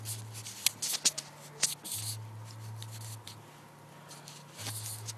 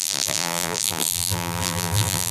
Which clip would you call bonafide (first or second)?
first